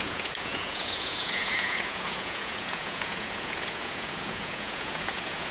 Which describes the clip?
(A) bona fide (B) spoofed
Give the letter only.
B